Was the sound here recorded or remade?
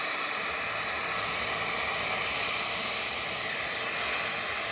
recorded